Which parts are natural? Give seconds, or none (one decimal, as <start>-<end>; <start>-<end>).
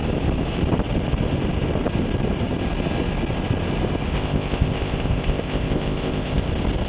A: 0.0-4.1; 6.5-6.9